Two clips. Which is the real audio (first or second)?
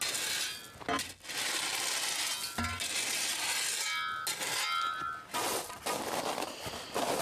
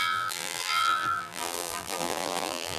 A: first